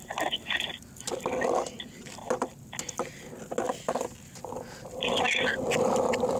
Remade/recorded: recorded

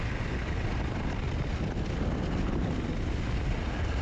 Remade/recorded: recorded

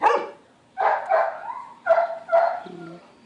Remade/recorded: recorded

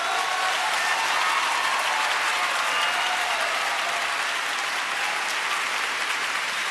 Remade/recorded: recorded